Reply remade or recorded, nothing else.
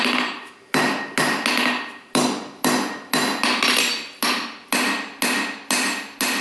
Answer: recorded